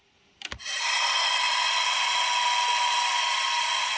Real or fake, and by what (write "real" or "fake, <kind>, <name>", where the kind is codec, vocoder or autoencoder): real